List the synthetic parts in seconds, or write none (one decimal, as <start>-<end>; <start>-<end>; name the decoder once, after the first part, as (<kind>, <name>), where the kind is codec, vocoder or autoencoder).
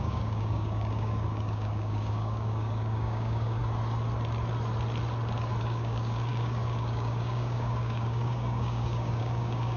0.0-3.6 (codec, DAC); 5.6-9.8